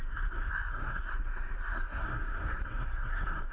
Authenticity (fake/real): fake